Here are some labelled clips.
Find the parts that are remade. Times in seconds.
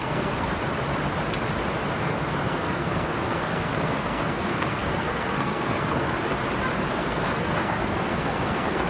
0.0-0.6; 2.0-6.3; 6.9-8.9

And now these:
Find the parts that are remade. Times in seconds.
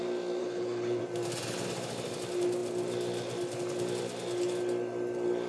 0.4-1.0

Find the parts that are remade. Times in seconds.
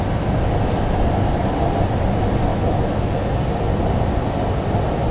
2.5-3.1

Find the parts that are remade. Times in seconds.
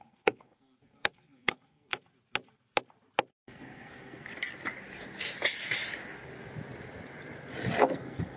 0.0-1.9; 3.3-4.3; 7.8-8.4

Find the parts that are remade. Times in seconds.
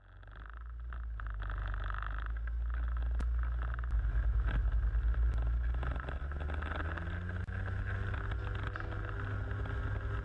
1.6-2.3